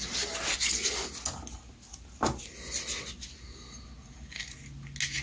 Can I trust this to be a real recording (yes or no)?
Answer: yes